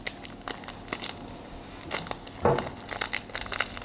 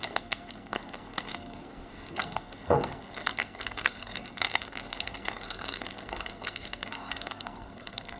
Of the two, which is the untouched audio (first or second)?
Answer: first